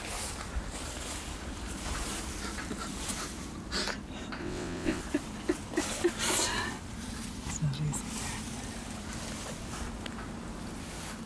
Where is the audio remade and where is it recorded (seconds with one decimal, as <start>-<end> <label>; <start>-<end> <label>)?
0.0-4.4 recorded; 4.4-5.0 remade; 5.0-11.3 recorded